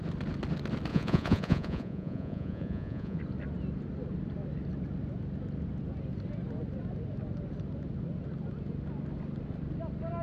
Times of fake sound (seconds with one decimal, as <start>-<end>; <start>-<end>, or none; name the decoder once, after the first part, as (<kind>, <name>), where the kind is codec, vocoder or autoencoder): 0.9-3.2 (vocoder, Vocos)